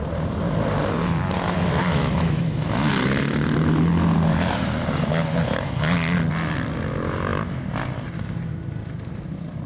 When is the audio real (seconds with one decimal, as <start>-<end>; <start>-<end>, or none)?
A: 0.0-1.8; 2.9-9.7